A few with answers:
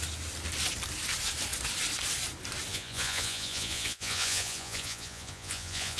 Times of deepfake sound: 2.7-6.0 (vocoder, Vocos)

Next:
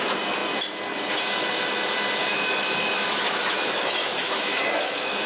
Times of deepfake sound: 2.3-5.3 (autoencoder, DAC-VAE)

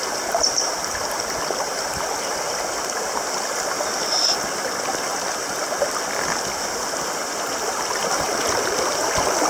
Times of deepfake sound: none

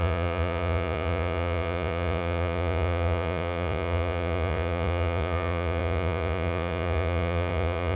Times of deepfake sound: 0.0-7.9 (vocoder, Vocos)

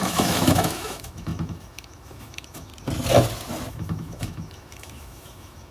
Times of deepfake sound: 0.0-2.7 (autoencoder, DAC-VAE); 3.7-5.7